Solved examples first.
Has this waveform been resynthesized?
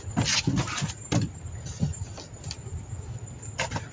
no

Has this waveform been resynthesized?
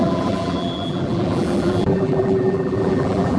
yes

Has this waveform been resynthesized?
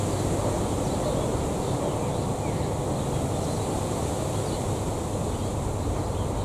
no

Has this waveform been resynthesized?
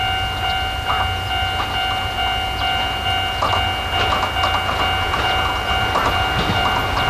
no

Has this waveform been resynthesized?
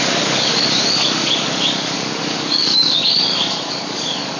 yes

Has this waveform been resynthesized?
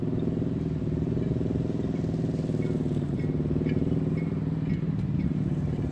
yes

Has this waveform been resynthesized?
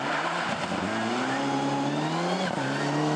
no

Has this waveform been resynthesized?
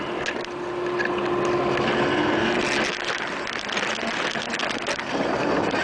no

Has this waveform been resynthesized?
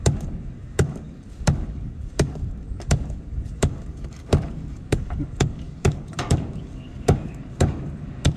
yes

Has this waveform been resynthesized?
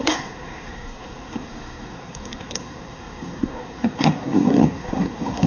yes